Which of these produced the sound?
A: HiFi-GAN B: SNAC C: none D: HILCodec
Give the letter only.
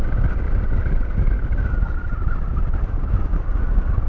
C